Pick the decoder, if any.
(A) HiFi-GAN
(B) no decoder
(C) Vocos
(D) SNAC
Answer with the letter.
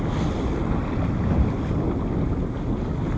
B